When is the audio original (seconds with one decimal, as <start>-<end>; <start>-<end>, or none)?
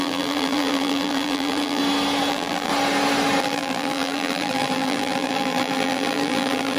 1.8-2.3; 2.7-3.4